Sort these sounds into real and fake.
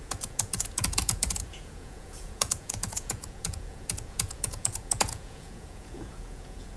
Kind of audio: fake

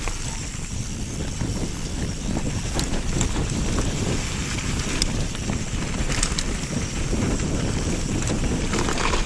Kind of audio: fake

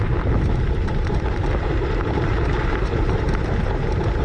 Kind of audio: fake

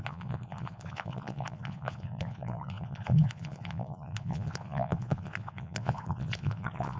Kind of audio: fake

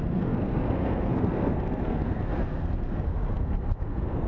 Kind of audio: fake